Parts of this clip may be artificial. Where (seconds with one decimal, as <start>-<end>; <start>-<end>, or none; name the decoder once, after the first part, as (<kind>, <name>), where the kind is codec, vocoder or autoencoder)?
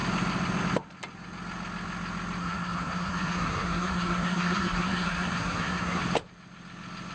2.4-6.0 (codec, SNAC)